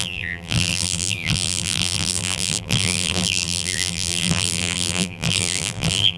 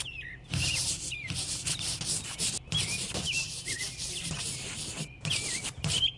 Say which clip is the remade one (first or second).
first